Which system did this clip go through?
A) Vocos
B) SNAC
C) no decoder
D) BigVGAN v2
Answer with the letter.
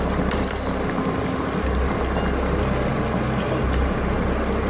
C